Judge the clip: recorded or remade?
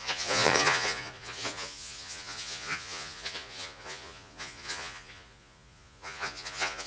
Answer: remade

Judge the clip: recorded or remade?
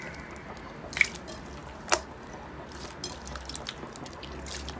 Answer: recorded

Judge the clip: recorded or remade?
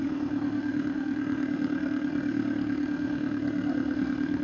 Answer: remade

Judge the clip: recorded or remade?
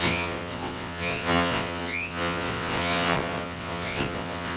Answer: remade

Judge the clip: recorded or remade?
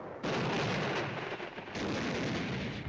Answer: recorded